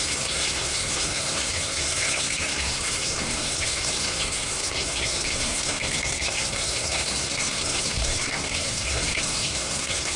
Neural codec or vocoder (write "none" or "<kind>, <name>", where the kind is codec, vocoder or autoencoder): codec, SNAC